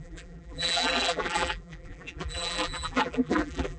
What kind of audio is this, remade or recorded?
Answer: remade